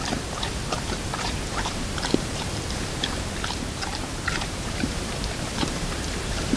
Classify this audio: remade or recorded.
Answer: remade